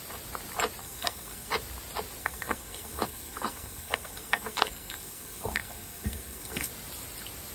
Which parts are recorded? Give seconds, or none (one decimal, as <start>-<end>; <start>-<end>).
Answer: 0.0-0.8; 1.5-2.2; 6.7-7.5